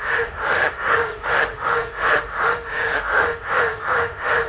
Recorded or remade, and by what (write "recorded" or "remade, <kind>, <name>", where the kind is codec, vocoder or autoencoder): remade, autoencoder, DAC-VAE